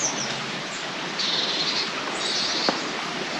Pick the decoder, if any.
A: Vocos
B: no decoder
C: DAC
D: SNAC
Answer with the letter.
B